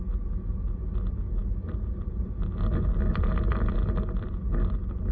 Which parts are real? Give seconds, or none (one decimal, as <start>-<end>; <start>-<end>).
0.0-5.1

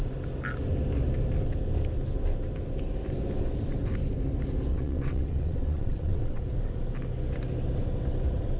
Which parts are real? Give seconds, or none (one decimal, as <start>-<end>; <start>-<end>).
0.0-4.7; 6.4-8.6

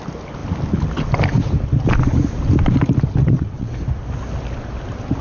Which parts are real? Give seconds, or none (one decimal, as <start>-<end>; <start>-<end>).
0.0-3.2; 3.7-5.2

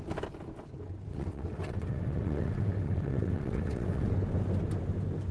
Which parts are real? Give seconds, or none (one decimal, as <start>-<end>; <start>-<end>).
0.0-1.1; 4.1-5.3

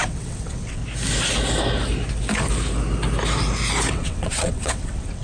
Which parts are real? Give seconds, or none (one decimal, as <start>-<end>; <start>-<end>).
0.8-3.9

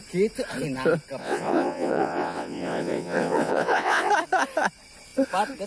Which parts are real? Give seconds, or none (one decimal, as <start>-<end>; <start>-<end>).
0.0-1.2; 4.1-5.7

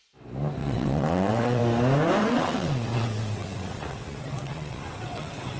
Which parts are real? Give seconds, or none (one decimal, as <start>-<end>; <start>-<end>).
0.0-0.6; 1.6-2.2

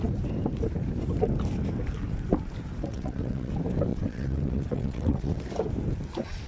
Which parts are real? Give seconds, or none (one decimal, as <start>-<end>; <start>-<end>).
0.0-2.9; 3.5-3.9; 5.4-6.5